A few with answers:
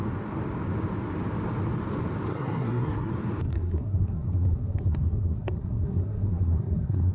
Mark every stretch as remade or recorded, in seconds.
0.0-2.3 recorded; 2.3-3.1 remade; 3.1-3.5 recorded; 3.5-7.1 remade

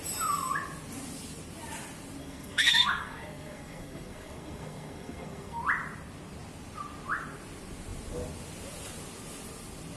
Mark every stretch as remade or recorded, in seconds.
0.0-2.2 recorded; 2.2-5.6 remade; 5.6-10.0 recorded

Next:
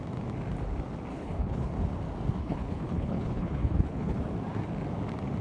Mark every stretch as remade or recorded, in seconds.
0.0-1.1 recorded; 1.1-1.7 remade; 1.7-2.4 recorded; 2.4-4.2 remade; 4.2-5.4 recorded